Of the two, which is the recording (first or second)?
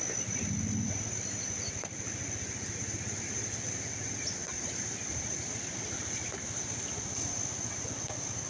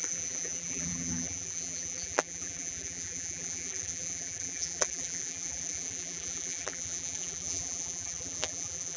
first